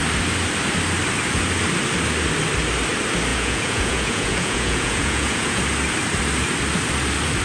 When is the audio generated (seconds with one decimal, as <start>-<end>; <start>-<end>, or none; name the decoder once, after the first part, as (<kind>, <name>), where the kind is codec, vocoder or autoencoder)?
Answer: 3.3-5.6 (vocoder, Vocos)